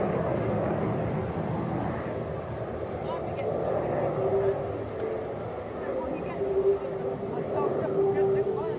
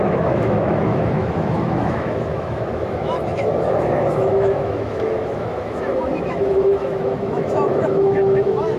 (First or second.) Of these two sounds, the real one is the first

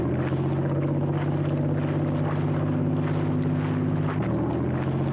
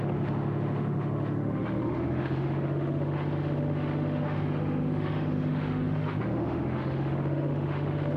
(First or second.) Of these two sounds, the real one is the first